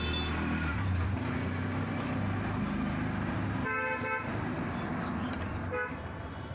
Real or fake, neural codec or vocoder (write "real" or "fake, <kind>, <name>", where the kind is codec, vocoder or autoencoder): real